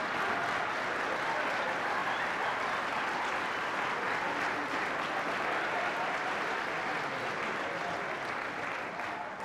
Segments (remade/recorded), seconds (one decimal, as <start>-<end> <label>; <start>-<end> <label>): 0.0-9.4 recorded